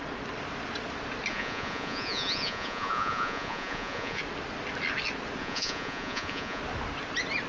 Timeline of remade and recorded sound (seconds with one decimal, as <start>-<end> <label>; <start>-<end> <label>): 0.0-1.3 recorded; 1.3-4.2 remade; 4.2-5.4 recorded; 5.4-6.6 remade; 6.6-7.5 recorded